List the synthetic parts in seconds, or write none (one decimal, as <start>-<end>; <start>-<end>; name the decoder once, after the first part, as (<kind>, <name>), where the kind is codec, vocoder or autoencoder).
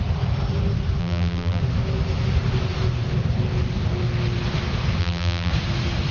1.0-1.6 (vocoder, BigVGAN v2); 5.0-5.5